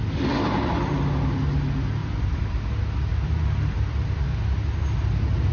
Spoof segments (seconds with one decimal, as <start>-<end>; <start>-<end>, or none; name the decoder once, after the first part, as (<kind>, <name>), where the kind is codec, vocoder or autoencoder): 2.0-2.6 (vocoder, BigVGAN v2); 3.1-4.6